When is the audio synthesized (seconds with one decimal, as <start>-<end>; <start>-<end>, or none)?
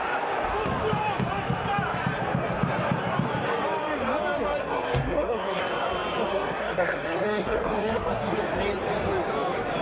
4.6-5.6; 6.3-8.4